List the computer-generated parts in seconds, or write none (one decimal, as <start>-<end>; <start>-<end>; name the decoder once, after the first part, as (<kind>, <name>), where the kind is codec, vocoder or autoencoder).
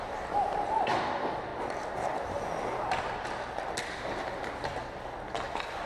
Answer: none